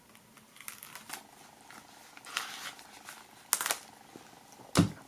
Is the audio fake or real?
real